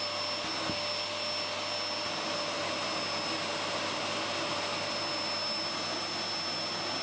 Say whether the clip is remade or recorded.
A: recorded